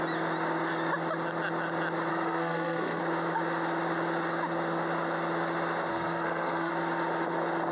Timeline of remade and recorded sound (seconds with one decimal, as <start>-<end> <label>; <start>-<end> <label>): 0.0-2.1 recorded; 2.1-3.0 remade; 3.0-5.9 recorded; 5.9-6.7 remade; 6.7-7.7 recorded